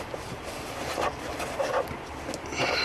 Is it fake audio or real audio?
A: real